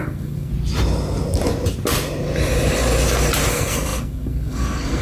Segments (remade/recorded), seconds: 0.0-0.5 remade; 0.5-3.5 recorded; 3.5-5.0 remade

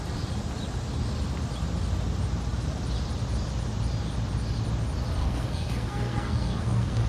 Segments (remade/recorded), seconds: 0.0-5.2 recorded; 5.2-7.1 remade

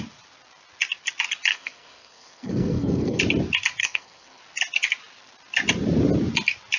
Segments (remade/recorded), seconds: 0.0-1.5 recorded; 1.5-3.2 remade; 3.2-3.8 recorded; 3.8-4.4 remade; 4.4-6.8 recorded

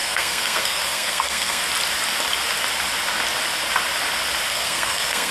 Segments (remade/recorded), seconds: 0.0-1.6 remade; 1.6-4.5 recorded; 4.5-5.3 remade

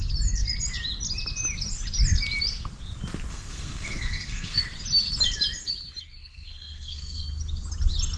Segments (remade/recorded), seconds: 0.0-3.3 recorded; 3.3-4.6 remade; 4.6-6.2 recorded; 6.2-7.2 remade; 7.2-8.2 recorded

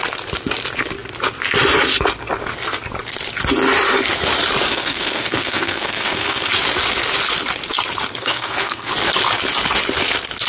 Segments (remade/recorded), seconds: 0.0-4.7 recorded; 4.7-6.5 remade; 6.5-8.2 recorded; 8.2-8.9 remade; 8.9-10.5 recorded

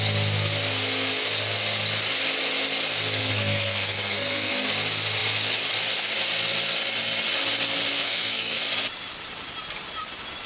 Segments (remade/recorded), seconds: 0.0-3.2 recorded; 3.2-4.5 remade; 4.5-7.9 recorded; 7.9-8.6 remade; 8.6-10.5 recorded